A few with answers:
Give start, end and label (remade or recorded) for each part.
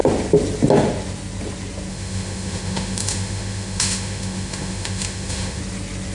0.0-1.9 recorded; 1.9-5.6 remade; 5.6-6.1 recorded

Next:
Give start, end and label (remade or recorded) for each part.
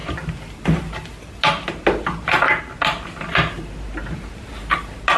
0.0-5.2 recorded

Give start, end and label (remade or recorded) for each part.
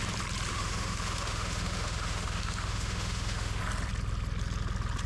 0.0-0.5 recorded; 0.5-3.6 remade; 3.6-5.1 recorded